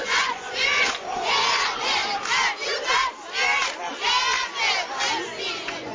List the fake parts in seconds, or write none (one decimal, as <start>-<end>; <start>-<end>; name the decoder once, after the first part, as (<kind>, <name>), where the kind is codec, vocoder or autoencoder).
0.0-2.0 (vocoder, Vocos); 5.5-5.9